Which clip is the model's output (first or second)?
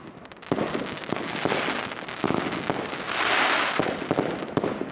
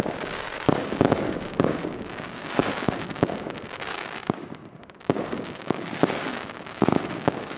second